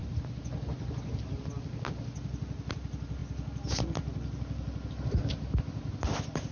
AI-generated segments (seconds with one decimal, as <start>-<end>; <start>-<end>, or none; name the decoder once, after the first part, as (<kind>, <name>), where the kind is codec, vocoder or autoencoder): none